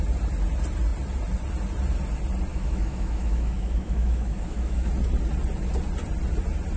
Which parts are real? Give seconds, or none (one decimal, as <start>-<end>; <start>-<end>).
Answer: 0.0-2.5; 4.9-6.8